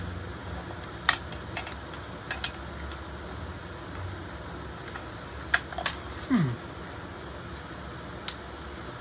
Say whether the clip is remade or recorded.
recorded